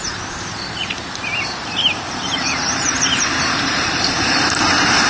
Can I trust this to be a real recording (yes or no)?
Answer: no